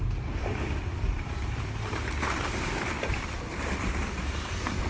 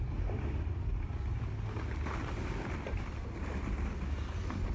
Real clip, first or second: second